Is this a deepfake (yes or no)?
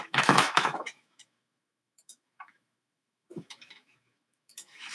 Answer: yes